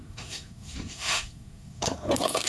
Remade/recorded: remade